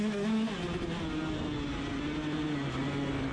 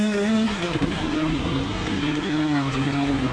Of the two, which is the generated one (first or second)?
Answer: second